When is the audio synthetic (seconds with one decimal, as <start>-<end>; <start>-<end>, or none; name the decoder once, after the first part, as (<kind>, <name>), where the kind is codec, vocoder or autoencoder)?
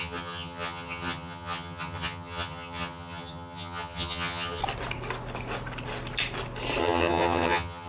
0.0-4.6 (vocoder, HiFi-GAN); 6.8-7.9